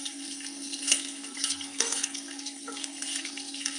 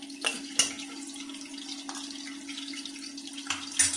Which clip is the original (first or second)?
second